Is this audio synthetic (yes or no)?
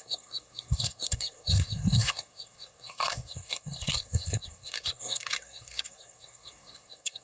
yes